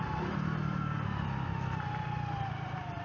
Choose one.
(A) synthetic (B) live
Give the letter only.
A